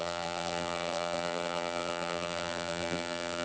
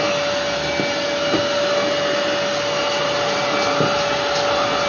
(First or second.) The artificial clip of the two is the first